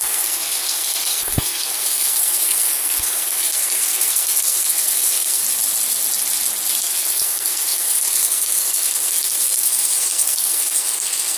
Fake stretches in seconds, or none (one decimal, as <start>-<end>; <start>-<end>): 0.0-5.4; 6.8-11.4